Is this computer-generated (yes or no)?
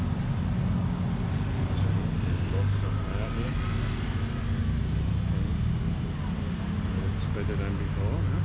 no